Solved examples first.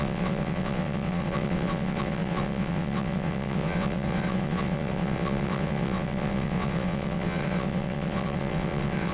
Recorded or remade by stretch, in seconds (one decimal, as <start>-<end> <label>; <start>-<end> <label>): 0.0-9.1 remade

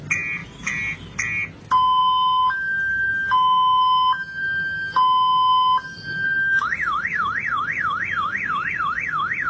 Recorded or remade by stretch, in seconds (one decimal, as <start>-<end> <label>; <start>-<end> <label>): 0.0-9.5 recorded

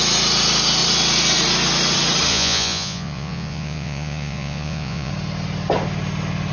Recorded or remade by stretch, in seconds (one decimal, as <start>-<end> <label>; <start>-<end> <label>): 0.0-2.3 recorded; 2.3-5.1 remade; 5.1-6.5 recorded

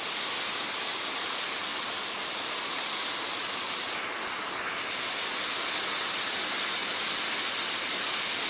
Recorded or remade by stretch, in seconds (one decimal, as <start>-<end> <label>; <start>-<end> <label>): 0.0-8.5 recorded

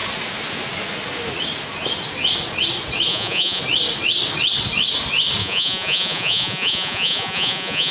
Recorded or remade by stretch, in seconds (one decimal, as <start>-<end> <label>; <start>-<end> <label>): 0.0-3.1 recorded; 3.1-3.6 remade; 3.6-5.4 recorded; 5.4-7.9 remade

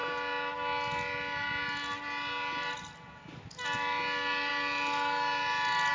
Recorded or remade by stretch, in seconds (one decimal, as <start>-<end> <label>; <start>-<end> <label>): 0.0-5.9 recorded

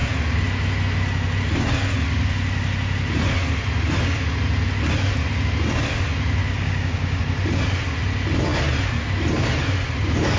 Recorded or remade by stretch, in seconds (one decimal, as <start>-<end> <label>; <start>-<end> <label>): 0.0-6.4 recorded; 6.4-7.2 remade; 7.2-10.4 recorded